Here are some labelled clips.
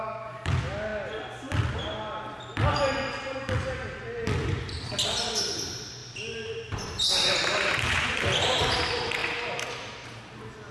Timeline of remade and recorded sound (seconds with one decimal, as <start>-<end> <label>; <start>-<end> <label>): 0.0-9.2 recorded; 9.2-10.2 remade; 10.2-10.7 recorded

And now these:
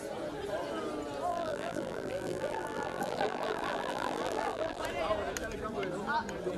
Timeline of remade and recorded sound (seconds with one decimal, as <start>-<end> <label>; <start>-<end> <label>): 0.0-1.3 recorded; 1.3-4.8 remade; 4.8-6.6 recorded

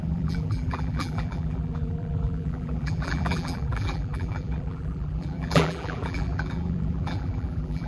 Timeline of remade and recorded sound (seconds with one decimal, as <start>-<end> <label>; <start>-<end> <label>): 0.0-7.9 remade

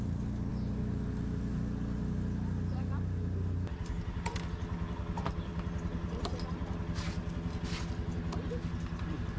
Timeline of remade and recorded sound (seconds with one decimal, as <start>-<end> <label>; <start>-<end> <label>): 0.0-9.4 recorded